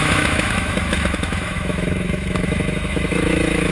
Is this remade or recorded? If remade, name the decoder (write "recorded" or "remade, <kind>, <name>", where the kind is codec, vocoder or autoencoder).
remade, autoencoder, DAC-VAE